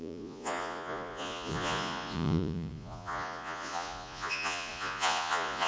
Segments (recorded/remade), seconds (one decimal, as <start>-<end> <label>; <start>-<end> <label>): 0.0-5.7 remade